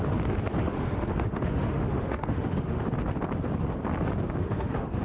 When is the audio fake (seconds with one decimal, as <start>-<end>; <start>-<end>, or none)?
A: 0.6-2.8; 4.4-5.0